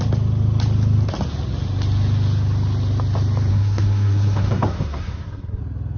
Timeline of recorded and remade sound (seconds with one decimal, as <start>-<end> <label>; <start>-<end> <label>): 0.0-3.5 recorded; 3.5-5.6 remade; 5.6-6.0 recorded